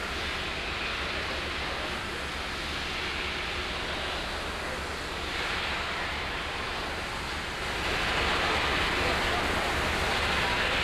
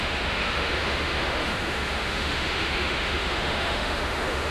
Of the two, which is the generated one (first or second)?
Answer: second